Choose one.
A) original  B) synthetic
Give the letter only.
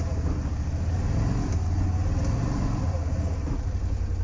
A